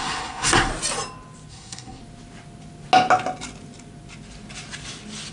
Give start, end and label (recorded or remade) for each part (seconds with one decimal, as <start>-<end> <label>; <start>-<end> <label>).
0.0-0.7 remade; 0.7-1.5 recorded; 1.5-2.0 remade; 2.0-5.3 recorded